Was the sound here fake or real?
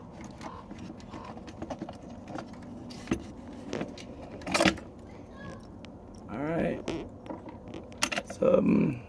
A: real